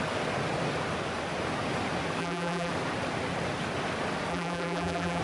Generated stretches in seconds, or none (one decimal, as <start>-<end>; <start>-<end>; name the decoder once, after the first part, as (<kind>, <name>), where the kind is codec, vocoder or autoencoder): 2.2-2.7 (vocoder, BigVGAN v2); 4.3-5.2